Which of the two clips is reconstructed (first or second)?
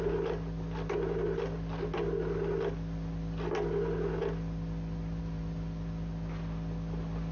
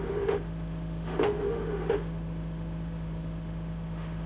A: second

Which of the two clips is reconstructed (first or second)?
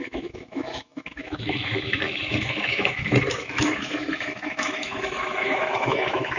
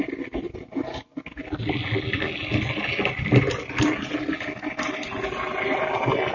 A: first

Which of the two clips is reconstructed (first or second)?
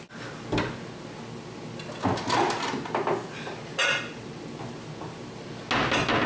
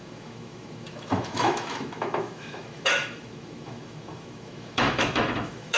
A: second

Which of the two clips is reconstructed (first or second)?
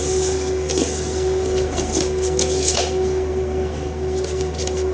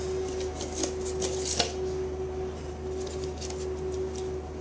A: first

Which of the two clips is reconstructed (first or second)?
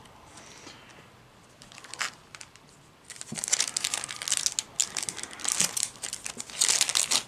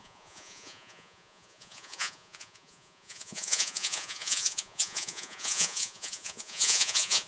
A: second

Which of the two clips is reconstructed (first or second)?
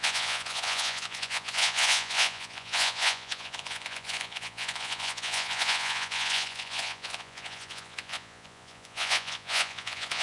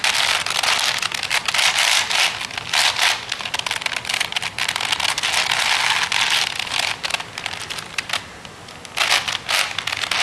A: first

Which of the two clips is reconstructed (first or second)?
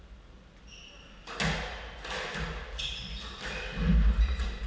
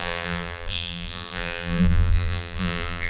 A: second